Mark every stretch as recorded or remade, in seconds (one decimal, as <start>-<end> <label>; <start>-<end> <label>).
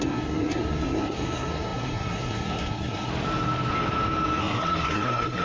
0.0-3.1 remade; 3.1-4.4 recorded; 4.4-5.4 remade